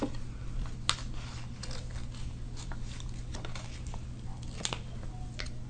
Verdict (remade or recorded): recorded